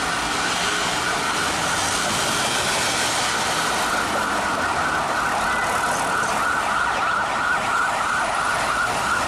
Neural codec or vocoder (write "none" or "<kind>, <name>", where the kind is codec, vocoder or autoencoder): none